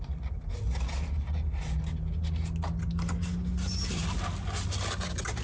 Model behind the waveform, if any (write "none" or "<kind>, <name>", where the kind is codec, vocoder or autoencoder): none